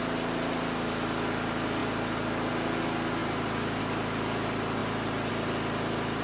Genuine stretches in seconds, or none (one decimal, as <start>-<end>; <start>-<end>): 0.0-3.2; 3.8-6.2